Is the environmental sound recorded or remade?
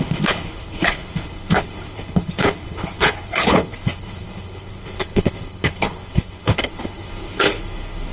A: remade